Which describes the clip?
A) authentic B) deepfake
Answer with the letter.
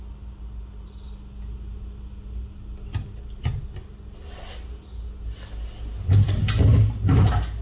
A